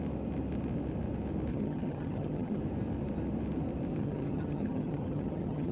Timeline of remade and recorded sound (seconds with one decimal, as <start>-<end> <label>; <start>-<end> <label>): 0.0-1.5 recorded; 1.5-2.6 remade; 2.6-3.9 recorded; 3.9-5.7 remade